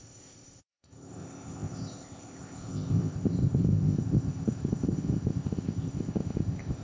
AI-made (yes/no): yes